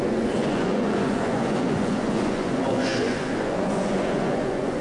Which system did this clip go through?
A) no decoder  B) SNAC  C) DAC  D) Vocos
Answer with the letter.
D